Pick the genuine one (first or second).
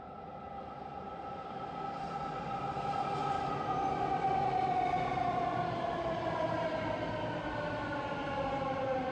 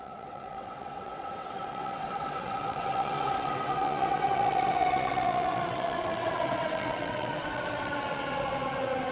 first